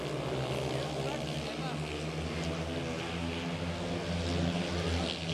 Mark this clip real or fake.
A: real